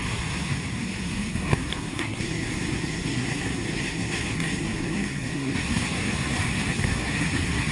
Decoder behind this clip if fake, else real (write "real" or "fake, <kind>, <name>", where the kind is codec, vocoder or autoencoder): fake, codec, SNAC